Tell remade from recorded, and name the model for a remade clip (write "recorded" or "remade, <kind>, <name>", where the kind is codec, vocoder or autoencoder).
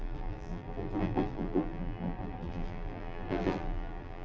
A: remade, vocoder, BigVGAN v2